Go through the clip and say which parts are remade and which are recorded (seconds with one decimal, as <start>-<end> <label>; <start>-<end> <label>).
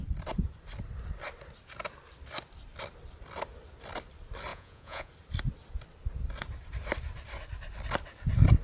0.0-4.5 recorded; 4.5-5.1 remade; 5.1-8.6 recorded